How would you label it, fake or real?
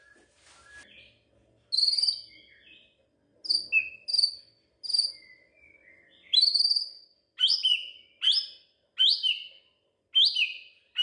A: real